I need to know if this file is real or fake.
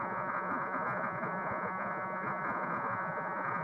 fake